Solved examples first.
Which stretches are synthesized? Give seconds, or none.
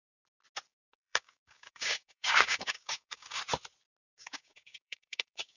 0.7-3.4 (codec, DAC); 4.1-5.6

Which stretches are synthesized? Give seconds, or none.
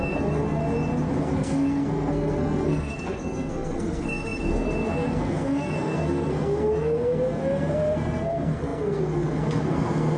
0.0-0.6 (codec, SNAC); 1.2-10.2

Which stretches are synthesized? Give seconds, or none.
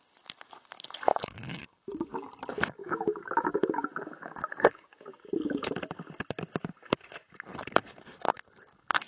1.1-1.6 (autoencoder, DAC-VAE); 2.8-5.2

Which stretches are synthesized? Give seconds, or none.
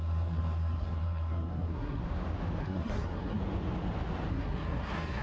0.0-2.0 (codec, SNAC); 2.6-3.4; 4.3-5.2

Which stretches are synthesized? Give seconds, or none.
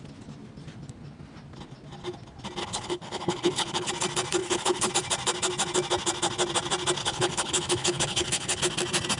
2.6-3.9 (codec, HILCodec); 4.4-4.9; 7.0-8.6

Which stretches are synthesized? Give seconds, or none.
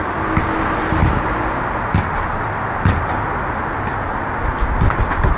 none